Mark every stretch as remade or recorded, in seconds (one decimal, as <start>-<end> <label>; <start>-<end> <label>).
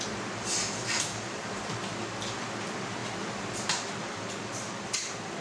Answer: 0.0-0.6 recorded; 0.6-1.4 remade; 1.4-5.4 recorded